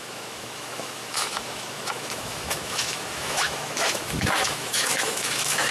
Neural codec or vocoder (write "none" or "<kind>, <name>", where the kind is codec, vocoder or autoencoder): autoencoder, DAC-VAE